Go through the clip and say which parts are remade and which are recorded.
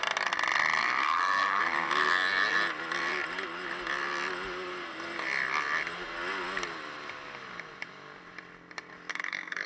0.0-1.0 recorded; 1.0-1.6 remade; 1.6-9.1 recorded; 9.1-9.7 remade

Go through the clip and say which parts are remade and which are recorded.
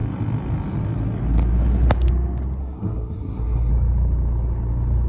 0.0-2.6 recorded; 2.6-3.7 remade; 3.7-5.1 recorded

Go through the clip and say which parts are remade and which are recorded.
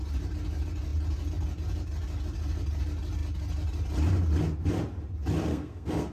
0.0-5.5 recorded; 5.5-6.1 remade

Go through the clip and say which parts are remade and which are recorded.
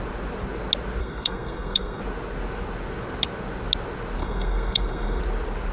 0.0-1.0 recorded; 1.0-2.0 remade; 2.0-4.2 recorded; 4.2-5.2 remade; 5.2-5.7 recorded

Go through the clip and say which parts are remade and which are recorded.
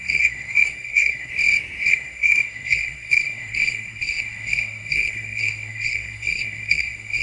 0.0-1.3 remade; 1.3-1.9 recorded; 1.9-7.2 remade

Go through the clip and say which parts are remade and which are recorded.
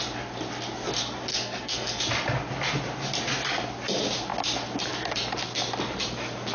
0.0-1.3 recorded; 1.3-2.0 remade; 2.0-6.5 recorded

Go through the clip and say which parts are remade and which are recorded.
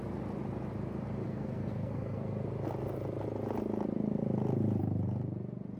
0.0-1.2 recorded; 1.2-2.4 remade; 2.4-5.8 recorded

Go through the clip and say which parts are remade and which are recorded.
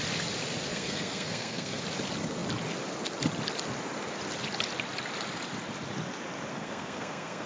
0.0-0.7 recorded; 0.7-1.8 remade; 1.8-6.5 recorded; 6.5-7.5 remade